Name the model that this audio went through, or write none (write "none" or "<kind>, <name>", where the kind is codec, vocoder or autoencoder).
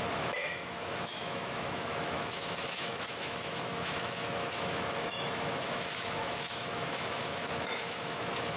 autoencoder, DAC-VAE